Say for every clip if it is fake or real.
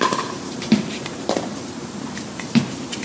fake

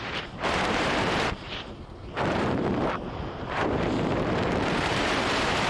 fake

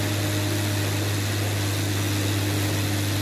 real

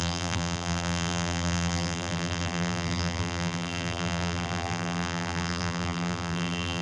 fake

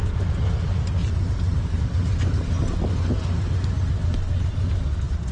real